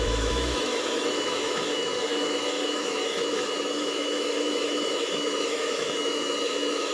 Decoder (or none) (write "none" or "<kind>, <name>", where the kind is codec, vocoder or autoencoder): autoencoder, DAC-VAE